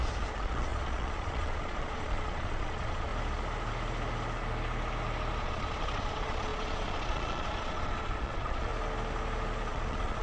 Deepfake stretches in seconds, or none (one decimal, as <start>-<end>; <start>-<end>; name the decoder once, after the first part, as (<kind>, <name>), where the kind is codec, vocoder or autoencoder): 0.0-3.1 (vocoder, Vocos); 5.4-8.7; 9.7-10.2